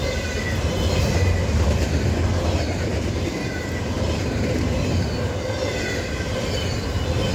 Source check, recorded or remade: recorded